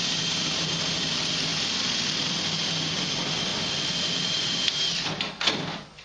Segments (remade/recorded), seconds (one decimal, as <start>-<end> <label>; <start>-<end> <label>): 0.0-6.0 recorded

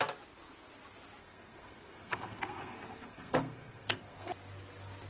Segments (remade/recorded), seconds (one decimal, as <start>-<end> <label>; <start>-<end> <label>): 0.0-1.2 recorded; 1.2-4.3 remade; 4.3-5.1 recorded